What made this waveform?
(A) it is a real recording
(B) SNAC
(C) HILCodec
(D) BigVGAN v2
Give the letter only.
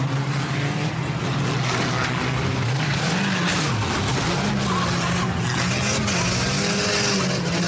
A